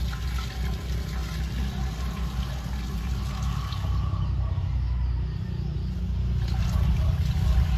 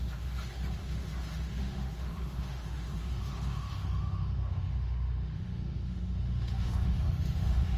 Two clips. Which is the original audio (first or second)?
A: first